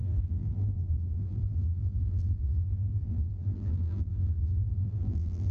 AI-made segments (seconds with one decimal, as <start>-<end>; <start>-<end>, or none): 0.0-5.5